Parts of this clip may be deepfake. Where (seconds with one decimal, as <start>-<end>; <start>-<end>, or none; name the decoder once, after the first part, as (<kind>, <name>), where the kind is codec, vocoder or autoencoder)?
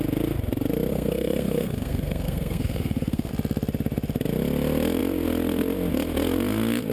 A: 0.9-3.3 (codec, SNAC)